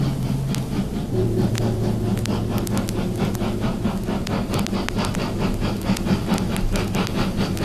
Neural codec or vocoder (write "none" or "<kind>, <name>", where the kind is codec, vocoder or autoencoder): none